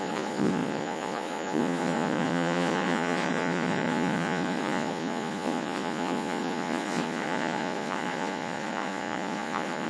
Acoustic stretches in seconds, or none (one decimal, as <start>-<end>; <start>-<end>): none